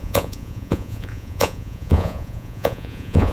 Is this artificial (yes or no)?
yes